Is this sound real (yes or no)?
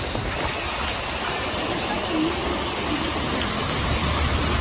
yes